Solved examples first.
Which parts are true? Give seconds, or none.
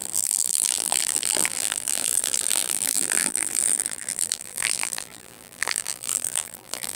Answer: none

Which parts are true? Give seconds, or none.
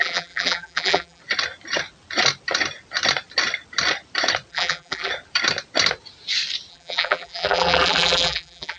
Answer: 1.2-4.5; 5.1-6.7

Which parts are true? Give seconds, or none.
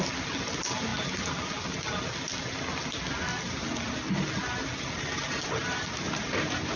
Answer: 0.0-5.6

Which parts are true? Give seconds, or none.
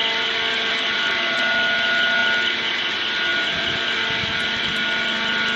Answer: 0.0-5.6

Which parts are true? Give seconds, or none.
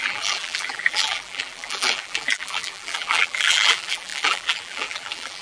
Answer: none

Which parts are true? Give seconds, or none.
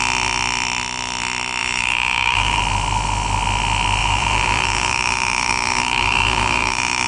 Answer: 0.0-1.6; 2.6-4.0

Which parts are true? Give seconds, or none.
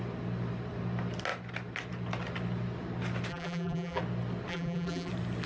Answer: 0.0-3.3; 4.0-4.5; 5.1-5.5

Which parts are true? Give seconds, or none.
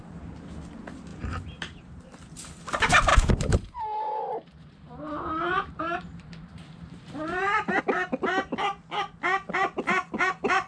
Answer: 0.0-1.1; 2.0-3.1; 7.8-10.7